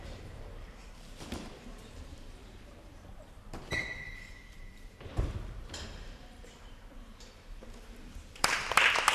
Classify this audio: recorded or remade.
remade